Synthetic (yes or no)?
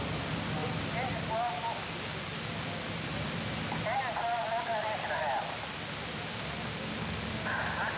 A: no